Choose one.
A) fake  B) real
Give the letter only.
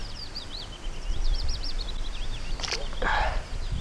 B